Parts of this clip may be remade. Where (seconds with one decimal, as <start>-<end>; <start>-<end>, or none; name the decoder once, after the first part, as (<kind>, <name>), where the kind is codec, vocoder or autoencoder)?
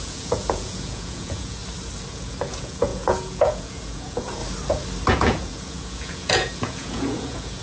0.0-1.6 (vocoder, Vocos); 2.1-4.4; 5.1-7.6